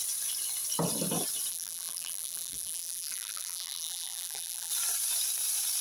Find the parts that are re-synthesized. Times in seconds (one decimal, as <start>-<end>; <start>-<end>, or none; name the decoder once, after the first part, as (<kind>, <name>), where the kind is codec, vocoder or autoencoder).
1.5-4.7 (vocoder, BigVGAN v2)